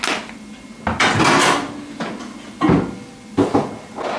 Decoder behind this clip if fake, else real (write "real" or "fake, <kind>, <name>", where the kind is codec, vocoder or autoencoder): real